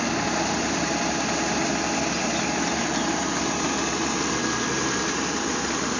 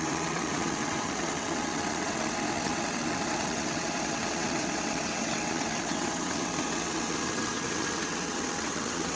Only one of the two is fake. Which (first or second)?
second